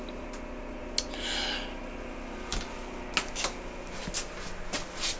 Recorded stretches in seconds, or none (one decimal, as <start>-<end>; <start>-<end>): 0.0-5.2